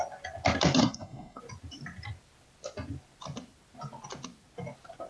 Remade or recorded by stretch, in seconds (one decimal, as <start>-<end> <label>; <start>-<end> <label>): 0.0-0.8 recorded; 0.8-1.4 remade; 1.4-5.1 recorded